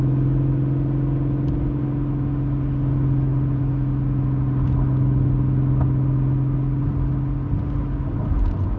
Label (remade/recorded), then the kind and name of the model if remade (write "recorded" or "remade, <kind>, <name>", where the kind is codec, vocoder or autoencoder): recorded